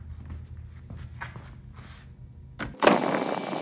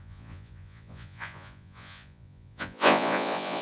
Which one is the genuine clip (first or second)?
first